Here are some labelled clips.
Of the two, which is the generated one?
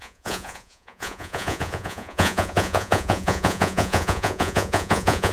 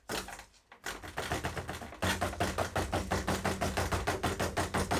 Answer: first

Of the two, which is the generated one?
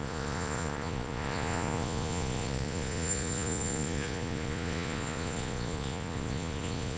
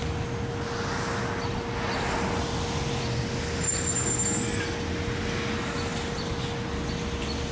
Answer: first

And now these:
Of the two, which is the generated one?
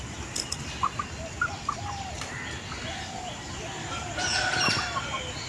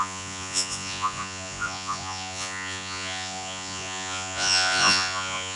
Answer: second